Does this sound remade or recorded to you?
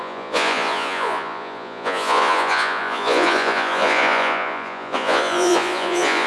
remade